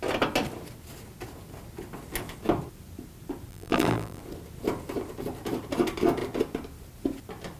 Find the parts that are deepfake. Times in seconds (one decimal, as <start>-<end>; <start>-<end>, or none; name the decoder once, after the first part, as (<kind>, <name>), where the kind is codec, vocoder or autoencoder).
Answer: 3.5-4.2 (vocoder, BigVGAN v2)